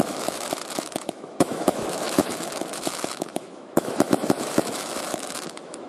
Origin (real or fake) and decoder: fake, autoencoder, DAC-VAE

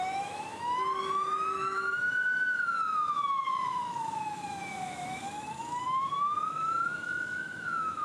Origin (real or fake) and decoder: fake, autoencoder, DAC-VAE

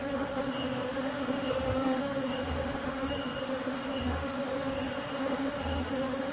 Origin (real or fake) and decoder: fake, autoencoder, DAC-VAE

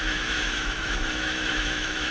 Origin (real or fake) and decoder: fake, autoencoder, DAC-VAE